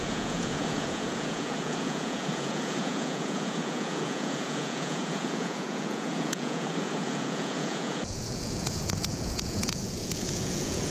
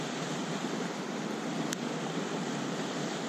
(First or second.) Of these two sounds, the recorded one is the second